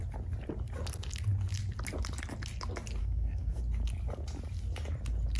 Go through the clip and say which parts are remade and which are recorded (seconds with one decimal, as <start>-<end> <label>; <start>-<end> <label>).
0.0-3.0 recorded; 3.0-3.6 remade; 3.6-5.4 recorded